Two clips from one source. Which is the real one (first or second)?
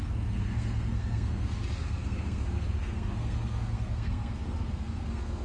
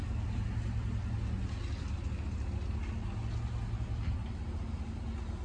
second